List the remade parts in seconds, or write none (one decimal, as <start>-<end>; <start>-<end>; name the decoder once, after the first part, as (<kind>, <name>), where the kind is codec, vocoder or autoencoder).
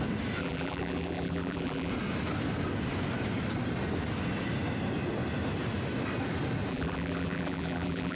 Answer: 0.4-1.9 (vocoder, BigVGAN v2); 6.7-8.2